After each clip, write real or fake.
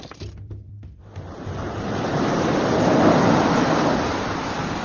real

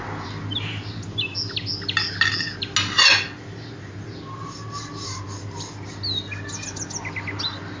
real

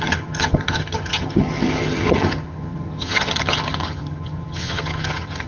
fake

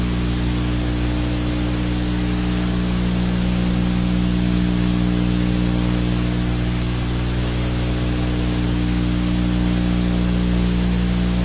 real